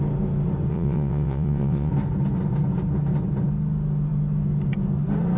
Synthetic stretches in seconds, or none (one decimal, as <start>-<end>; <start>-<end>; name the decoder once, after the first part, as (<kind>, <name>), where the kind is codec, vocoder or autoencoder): 0.7-1.9 (vocoder, WaveNeXt)